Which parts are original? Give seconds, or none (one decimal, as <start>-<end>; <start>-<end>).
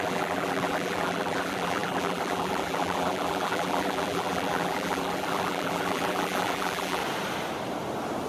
7.0-8.3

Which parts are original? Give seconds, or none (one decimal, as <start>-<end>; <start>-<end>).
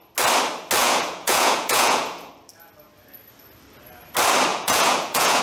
0.0-0.8; 2.3-4.5